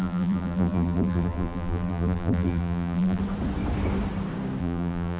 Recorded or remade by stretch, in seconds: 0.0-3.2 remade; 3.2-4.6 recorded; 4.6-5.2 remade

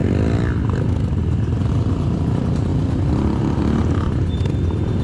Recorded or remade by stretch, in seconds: 0.0-5.0 recorded

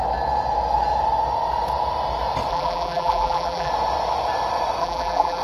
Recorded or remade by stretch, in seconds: 0.0-2.5 recorded; 2.5-3.7 remade; 3.7-4.8 recorded; 4.8-5.4 remade

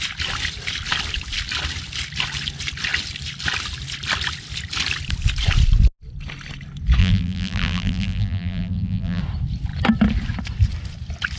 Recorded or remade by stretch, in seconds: 0.0-7.0 recorded; 7.0-9.2 remade; 9.2-11.4 recorded